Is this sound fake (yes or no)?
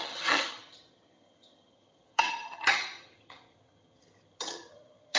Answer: yes